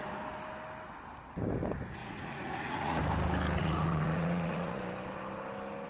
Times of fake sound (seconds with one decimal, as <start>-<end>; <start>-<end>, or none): 2.0-3.0; 3.6-4.8